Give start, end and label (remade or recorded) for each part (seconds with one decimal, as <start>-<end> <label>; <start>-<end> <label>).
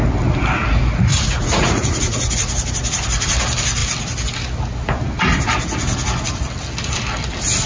0.0-1.1 recorded; 1.1-2.3 remade; 2.3-7.7 recorded